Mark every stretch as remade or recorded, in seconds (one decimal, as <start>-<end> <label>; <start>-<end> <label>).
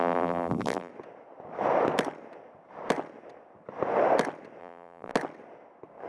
0.0-0.9 remade; 0.9-4.6 recorded; 4.6-5.1 remade; 5.1-6.1 recorded